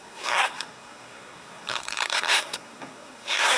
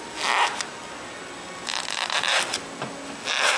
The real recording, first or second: second